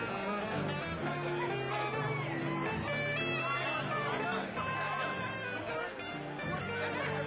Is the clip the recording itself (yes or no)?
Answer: yes